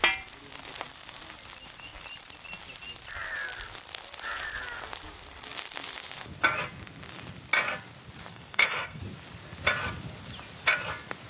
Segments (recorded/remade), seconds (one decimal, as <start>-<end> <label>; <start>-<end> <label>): 0.0-8.3 recorded; 8.3-9.0 remade; 9.0-11.3 recorded